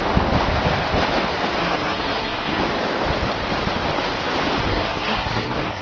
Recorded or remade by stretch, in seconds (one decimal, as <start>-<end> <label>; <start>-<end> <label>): 0.0-1.6 recorded; 1.6-2.6 remade; 2.6-4.7 recorded; 4.7-5.8 remade